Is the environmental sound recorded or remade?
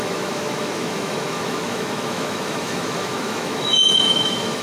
remade